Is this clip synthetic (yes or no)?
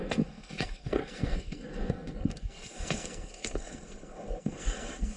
yes